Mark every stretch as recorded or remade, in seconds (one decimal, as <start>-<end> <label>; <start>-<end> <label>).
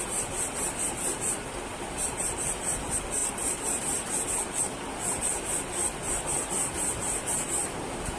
0.0-8.2 remade